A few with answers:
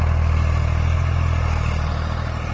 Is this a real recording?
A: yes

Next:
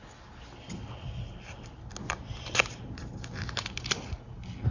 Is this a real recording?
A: yes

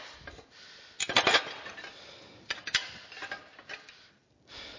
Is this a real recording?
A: yes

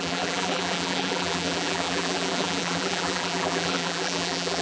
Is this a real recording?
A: no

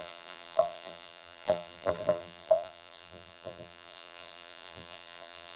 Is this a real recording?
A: no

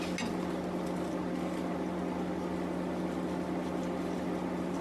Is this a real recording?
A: yes